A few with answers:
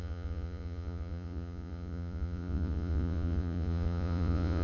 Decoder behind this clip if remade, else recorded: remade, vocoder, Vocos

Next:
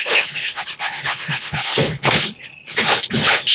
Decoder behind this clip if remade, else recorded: remade, codec, HILCodec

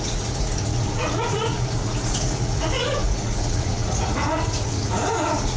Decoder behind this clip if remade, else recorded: remade, vocoder, Vocos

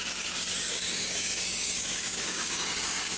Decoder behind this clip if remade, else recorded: remade, codec, DAC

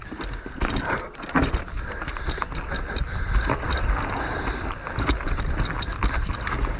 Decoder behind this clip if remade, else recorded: recorded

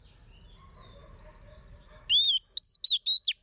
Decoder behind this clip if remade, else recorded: recorded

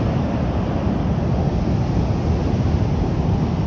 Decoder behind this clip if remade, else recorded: recorded